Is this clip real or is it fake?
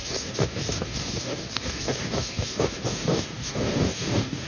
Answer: fake